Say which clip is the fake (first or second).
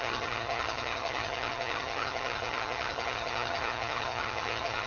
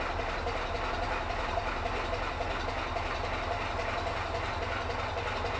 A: first